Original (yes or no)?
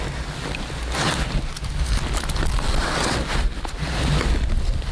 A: yes